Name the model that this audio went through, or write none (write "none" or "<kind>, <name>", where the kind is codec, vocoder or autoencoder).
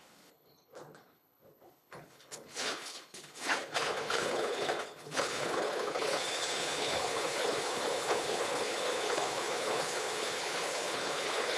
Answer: codec, HILCodec